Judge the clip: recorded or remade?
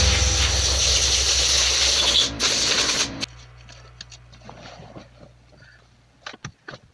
recorded